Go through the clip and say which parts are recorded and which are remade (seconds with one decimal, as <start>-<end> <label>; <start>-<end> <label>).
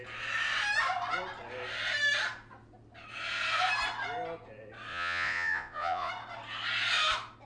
0.0-4.9 recorded; 4.9-6.1 remade; 6.1-7.5 recorded